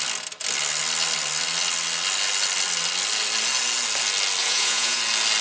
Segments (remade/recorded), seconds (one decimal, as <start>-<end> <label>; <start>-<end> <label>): 0.0-4.4 recorded; 4.4-5.0 remade; 5.0-5.4 recorded